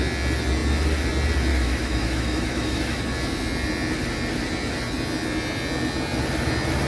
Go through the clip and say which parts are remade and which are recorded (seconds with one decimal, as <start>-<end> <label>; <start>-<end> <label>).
0.0-1.5 recorded; 1.5-3.0 remade; 3.0-6.9 recorded